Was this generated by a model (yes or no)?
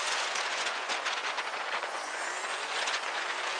yes